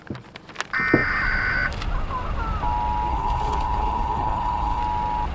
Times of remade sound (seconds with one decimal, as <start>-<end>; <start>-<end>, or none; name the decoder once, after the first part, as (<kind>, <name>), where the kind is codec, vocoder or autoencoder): 3.1-4.8 (codec, HILCodec)